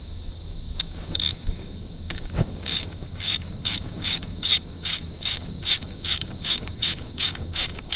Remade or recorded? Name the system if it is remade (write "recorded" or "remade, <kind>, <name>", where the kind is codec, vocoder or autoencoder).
remade, codec, DAC